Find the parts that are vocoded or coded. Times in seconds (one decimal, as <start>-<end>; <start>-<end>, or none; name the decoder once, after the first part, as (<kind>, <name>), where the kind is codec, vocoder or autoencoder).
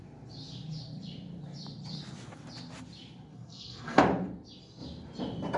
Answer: 3.3-4.0 (codec, SNAC)